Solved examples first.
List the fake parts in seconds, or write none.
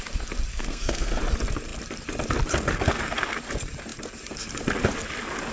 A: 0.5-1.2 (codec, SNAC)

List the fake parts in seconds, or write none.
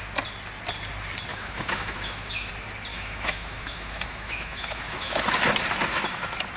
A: 1.3-2.5 (autoencoder, DAC-VAE); 2.9-5.2